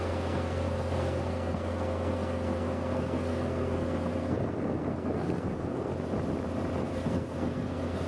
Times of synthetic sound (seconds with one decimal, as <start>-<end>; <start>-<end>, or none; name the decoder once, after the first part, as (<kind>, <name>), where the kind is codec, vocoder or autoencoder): 0.0-5.9 (codec, SNAC); 6.8-8.1